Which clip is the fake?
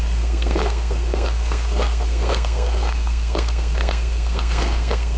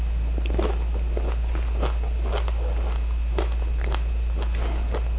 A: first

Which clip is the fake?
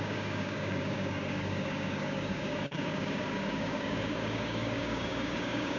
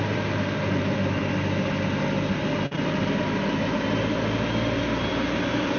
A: first